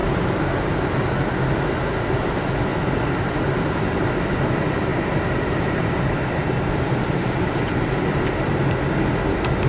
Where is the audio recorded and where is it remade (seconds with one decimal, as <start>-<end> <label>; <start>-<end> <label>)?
0.0-1.0 remade; 1.0-2.7 recorded; 2.7-3.7 remade; 3.7-4.9 recorded; 4.9-7.9 remade; 7.9-9.7 recorded